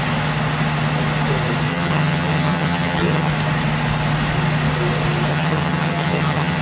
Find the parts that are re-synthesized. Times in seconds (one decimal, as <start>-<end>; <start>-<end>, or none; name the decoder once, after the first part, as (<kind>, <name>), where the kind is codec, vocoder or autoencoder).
1.7-3.3 (vocoder, HiFi-GAN); 5.3-6.6